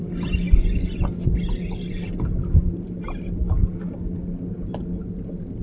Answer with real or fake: real